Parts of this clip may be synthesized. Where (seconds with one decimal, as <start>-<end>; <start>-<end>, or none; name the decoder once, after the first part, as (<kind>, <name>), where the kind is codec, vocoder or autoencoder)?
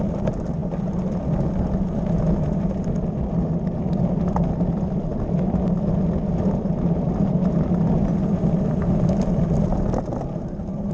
none